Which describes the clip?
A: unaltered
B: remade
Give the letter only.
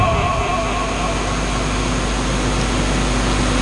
A